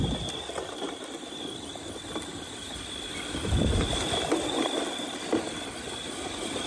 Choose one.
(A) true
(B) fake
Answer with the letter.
A